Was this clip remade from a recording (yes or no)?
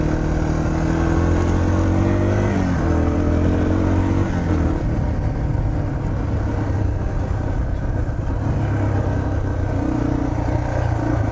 no